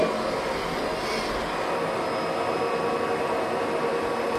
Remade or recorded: recorded